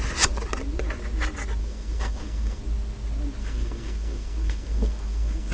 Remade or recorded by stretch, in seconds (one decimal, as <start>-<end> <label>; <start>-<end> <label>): 0.0-1.6 recorded; 1.6-2.6 remade; 2.6-3.4 recorded; 3.4-5.5 remade